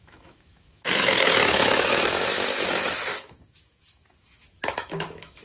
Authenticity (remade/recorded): remade